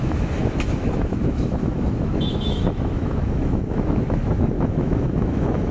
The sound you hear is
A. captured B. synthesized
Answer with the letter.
B